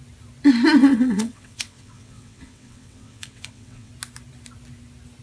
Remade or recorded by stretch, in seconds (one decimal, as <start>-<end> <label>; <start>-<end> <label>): 0.0-0.8 recorded; 0.8-3.9 remade; 3.9-5.2 recorded